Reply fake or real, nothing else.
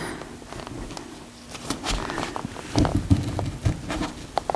real